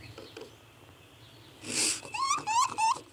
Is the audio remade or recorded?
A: recorded